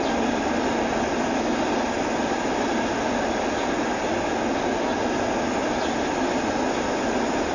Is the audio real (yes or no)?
yes